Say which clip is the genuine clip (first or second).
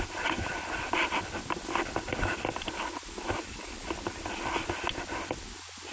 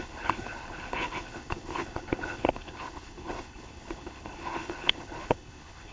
first